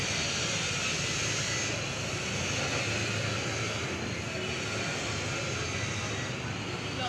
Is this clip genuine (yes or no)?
yes